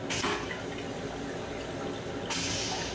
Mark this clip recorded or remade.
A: recorded